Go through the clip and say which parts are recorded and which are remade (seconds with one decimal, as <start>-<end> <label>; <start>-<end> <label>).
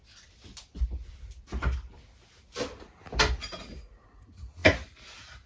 0.0-5.5 recorded